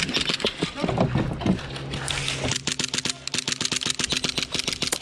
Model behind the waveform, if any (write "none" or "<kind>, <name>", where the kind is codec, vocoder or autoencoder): none